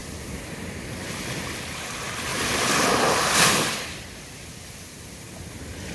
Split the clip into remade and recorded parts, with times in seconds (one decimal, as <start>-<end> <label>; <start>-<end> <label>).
0.0-1.0 remade; 1.0-2.3 recorded; 2.3-5.9 remade